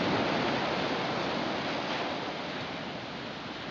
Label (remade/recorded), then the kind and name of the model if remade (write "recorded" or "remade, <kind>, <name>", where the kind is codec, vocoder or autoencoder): recorded